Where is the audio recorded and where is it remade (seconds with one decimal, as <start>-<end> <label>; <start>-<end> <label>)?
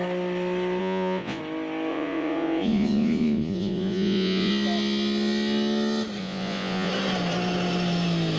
0.0-0.8 recorded; 0.8-1.4 remade; 1.4-1.9 recorded; 1.9-4.5 remade; 4.5-6.2 recorded; 6.2-6.9 remade; 6.9-8.4 recorded